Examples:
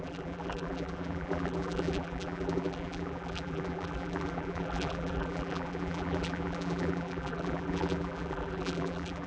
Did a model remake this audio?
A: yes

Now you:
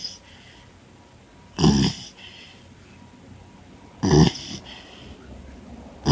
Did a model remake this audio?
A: no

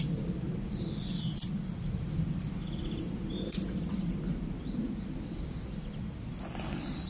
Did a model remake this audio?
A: yes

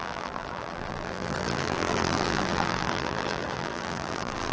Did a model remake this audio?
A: yes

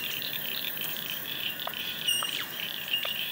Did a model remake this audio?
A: yes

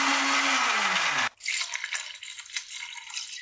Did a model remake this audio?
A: no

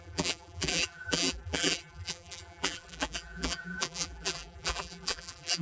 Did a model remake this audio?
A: yes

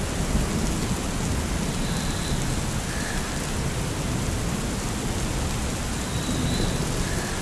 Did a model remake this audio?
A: no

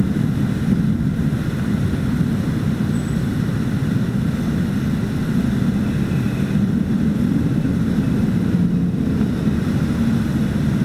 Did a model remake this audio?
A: no